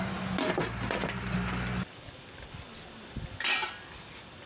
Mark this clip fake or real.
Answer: real